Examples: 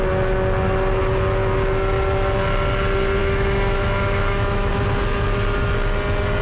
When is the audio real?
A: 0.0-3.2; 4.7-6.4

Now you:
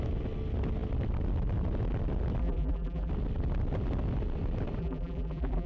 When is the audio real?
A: 0.0-2.4; 3.1-4.8

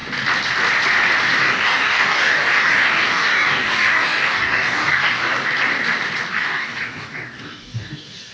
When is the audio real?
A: 0.0-1.4; 5.2-6.3

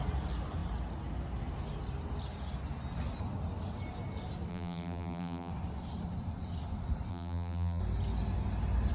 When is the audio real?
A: 0.0-4.5; 5.5-7.1; 7.8-8.9

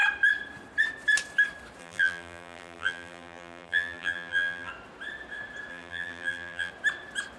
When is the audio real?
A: 0.0-1.8; 4.7-5.7; 6.7-7.4

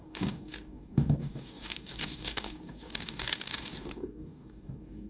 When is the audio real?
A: none